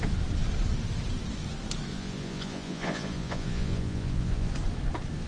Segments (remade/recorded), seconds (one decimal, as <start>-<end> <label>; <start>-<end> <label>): 0.0-1.9 recorded; 1.9-4.5 remade; 4.5-5.3 recorded